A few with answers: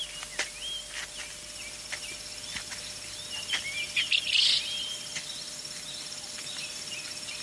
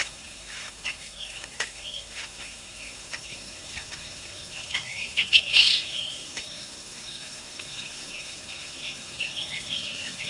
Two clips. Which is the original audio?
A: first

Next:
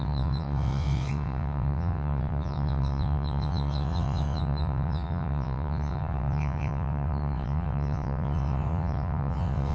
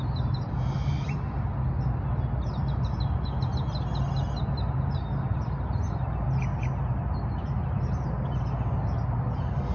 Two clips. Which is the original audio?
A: second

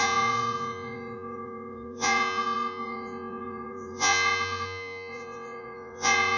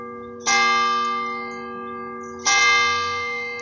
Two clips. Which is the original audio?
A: second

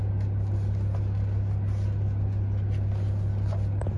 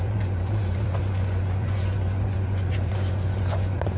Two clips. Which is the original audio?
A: first